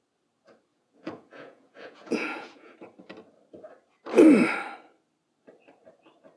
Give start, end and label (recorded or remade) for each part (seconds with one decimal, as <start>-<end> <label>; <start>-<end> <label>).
0.0-0.7 recorded; 0.7-2.7 remade; 2.7-6.4 recorded